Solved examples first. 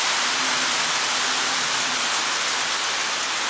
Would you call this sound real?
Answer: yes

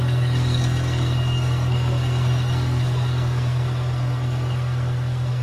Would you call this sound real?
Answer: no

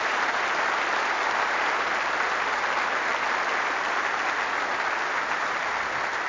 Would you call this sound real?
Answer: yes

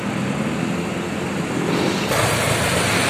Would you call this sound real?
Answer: yes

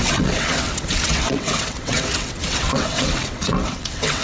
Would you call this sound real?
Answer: no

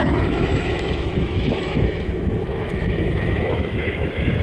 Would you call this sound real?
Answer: no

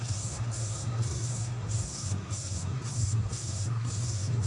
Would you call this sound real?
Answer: no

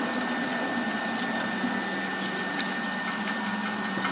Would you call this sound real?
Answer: yes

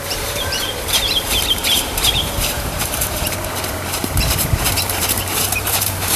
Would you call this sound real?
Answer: no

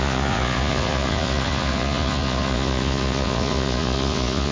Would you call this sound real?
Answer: no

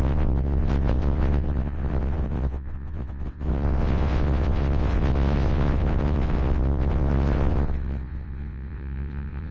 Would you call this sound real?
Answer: no